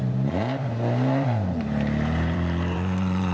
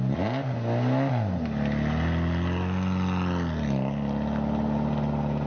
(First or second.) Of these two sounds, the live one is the second